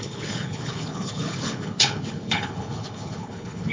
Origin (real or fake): fake